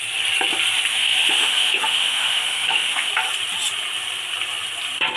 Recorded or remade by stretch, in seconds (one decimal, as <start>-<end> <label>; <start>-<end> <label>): 0.0-0.9 recorded; 0.9-3.1 remade; 3.1-5.2 recorded

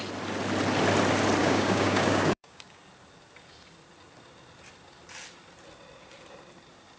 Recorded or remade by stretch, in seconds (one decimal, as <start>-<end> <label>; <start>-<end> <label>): 0.0-1.4 recorded; 1.4-2.8 remade; 2.8-7.0 recorded

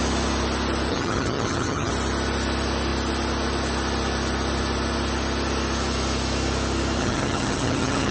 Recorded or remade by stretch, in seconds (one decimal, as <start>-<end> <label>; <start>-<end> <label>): 0.0-0.9 recorded; 0.9-1.9 remade; 1.9-7.0 recorded; 7.0-8.1 remade

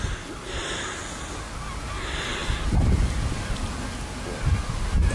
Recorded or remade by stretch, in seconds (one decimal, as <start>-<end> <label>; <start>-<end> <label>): 0.0-2.4 recorded; 2.4-2.9 remade; 2.9-5.1 recorded

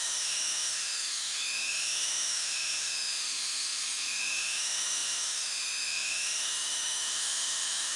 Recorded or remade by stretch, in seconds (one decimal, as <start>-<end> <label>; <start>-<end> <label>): 0.0-8.0 remade

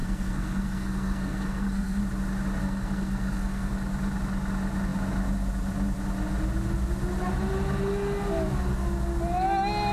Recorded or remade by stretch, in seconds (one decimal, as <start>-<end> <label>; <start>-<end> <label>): 0.0-2.0 remade; 2.0-2.6 recorded; 2.6-3.7 remade; 3.7-9.9 recorded

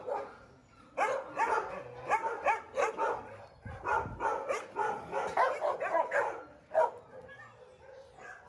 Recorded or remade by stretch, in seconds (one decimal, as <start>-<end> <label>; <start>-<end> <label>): 0.0-8.5 recorded

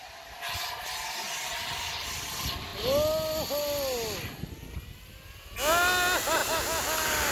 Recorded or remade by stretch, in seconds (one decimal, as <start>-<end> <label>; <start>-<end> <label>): 0.0-7.3 recorded